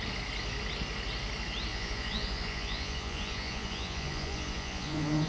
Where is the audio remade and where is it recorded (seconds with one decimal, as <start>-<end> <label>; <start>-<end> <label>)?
0.0-1.7 recorded; 1.7-5.3 remade